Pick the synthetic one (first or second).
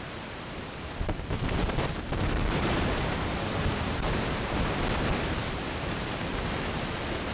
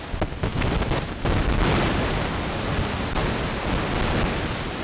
first